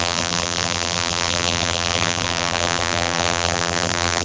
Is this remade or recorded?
remade